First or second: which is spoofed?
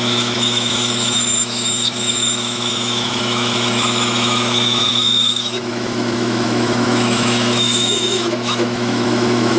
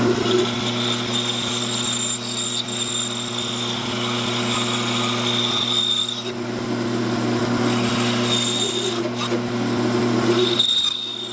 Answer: first